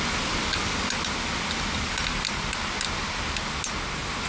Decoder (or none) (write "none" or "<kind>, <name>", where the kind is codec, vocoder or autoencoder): none